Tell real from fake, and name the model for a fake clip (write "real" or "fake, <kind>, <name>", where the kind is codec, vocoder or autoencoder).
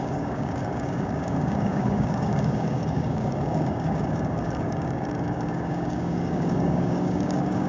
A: fake, codec, DAC